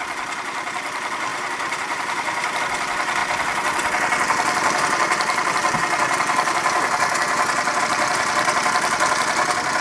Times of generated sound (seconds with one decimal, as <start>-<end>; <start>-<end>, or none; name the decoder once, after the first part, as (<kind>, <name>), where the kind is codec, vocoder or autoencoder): 1.3-2.6 (vocoder, BigVGAN v2)